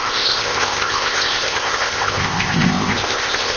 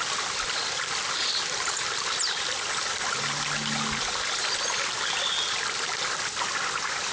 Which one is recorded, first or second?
second